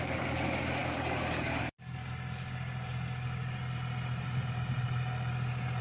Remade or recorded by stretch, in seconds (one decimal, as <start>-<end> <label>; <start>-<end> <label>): 0.0-2.0 remade; 2.0-5.8 recorded